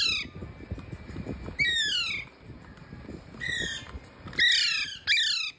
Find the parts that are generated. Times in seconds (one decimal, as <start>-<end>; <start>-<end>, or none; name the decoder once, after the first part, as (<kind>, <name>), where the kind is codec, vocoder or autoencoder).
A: none